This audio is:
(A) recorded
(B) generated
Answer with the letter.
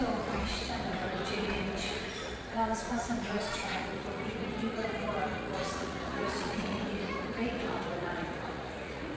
B